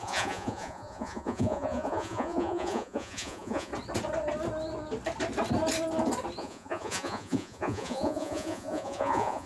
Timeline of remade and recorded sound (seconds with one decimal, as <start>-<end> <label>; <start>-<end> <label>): 0.0-3.7 remade; 3.7-6.4 recorded; 6.4-9.5 remade